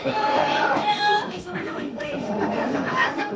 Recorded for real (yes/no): no